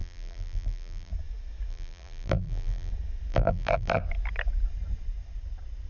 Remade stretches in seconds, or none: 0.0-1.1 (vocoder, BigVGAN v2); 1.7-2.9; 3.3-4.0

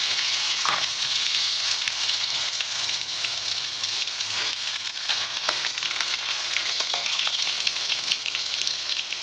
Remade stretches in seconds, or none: 0.0-9.2 (codec, SNAC)

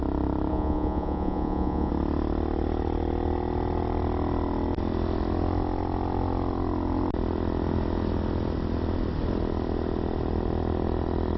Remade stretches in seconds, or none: 0.5-1.9 (vocoder, Vocos)

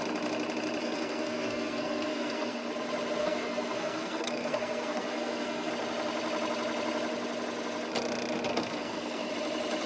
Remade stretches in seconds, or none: 0.8-2.6 (codec, SNAC); 3.2-5.7; 8.5-9.3

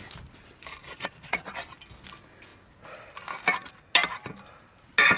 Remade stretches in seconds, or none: 0.8-1.5 (vocoder, Vocos)

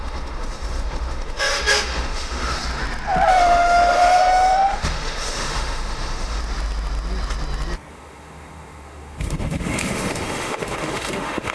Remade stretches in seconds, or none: 0.0-2.6 (autoencoder, DAC-VAE); 3.3-6.4; 7.9-11.5

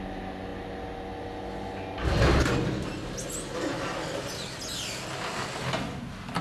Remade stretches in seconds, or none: none